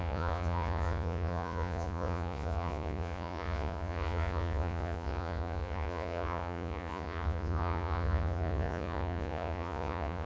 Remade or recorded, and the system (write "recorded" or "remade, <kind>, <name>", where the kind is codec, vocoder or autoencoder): remade, vocoder, Vocos